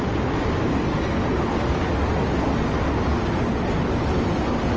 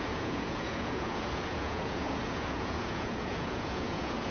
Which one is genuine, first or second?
first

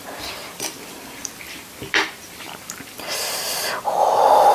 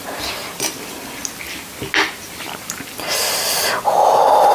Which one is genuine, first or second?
second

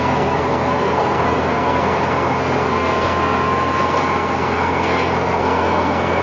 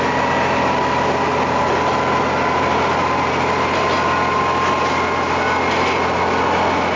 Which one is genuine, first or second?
second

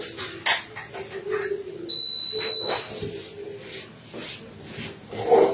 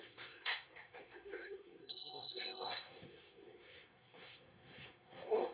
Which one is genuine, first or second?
first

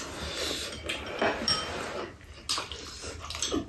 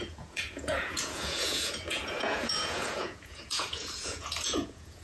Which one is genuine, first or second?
first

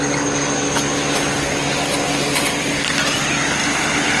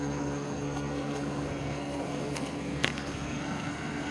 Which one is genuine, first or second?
first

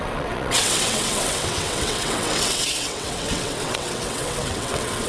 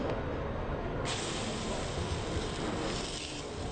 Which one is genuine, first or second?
second